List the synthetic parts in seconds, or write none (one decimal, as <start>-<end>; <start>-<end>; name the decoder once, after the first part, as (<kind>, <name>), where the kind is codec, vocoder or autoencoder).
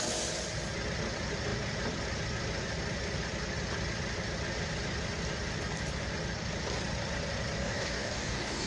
7.6-8.7 (codec, DAC)